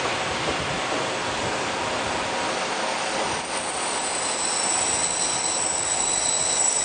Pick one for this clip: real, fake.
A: real